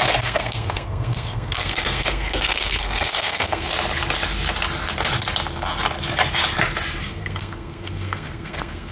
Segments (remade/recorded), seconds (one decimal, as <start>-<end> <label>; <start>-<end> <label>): 0.0-3.7 remade; 3.7-7.0 recorded; 7.0-8.9 remade